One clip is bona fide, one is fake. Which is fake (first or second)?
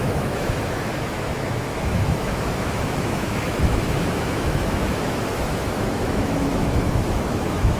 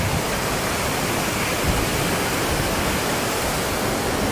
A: first